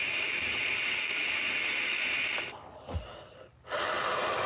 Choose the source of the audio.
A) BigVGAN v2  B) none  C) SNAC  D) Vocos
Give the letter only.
B